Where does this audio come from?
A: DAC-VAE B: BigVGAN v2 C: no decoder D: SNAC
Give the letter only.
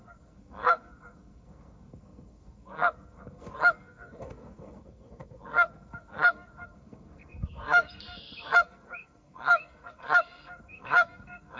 D